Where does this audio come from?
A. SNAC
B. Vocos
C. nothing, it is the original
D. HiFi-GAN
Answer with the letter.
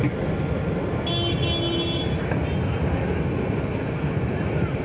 C